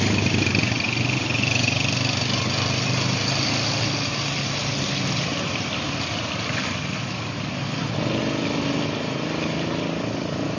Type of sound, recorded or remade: recorded